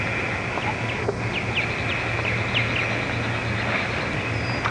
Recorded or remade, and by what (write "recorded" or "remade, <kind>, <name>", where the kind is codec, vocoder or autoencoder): recorded